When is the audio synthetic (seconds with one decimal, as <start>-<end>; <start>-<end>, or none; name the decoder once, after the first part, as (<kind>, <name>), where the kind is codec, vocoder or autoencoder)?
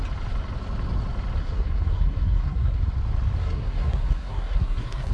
1.4-2.8 (codec, SNAC); 3.4-5.1